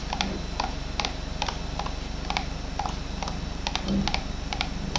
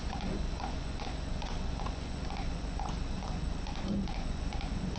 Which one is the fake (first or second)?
second